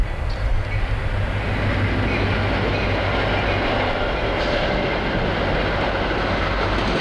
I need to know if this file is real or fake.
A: real